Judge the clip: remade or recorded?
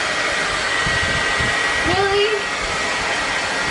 recorded